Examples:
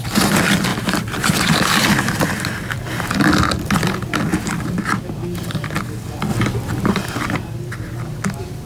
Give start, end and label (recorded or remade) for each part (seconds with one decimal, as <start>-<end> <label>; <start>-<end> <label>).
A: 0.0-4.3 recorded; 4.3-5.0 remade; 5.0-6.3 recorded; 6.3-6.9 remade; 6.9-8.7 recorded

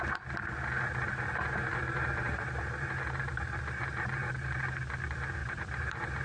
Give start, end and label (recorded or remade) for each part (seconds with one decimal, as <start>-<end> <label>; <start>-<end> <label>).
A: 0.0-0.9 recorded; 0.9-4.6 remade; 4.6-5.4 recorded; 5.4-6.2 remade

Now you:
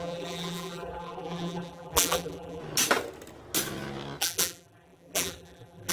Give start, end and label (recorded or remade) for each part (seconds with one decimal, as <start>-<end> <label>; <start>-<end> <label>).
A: 0.0-2.6 remade; 2.6-4.2 recorded; 4.2-5.9 remade

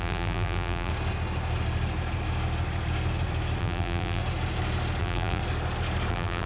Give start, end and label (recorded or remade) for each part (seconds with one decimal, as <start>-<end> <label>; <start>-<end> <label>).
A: 0.0-0.9 remade; 0.9-3.6 recorded; 3.6-4.2 remade; 4.2-5.0 recorded; 5.0-5.4 remade; 5.4-6.1 recorded; 6.1-6.5 remade

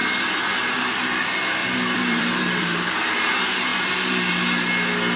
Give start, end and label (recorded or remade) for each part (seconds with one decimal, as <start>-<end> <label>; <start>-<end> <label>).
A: 0.0-1.6 recorded; 1.6-3.3 remade; 3.3-3.7 recorded; 3.7-4.3 remade; 4.3-5.2 recorded